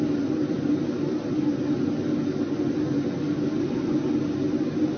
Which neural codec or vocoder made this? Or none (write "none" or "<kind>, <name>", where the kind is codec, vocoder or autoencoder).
none